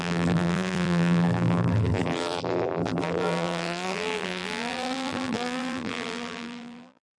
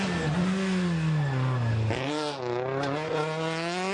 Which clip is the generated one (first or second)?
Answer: first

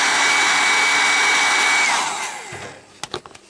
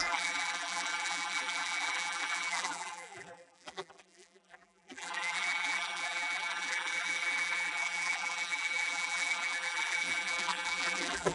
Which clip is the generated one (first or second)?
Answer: second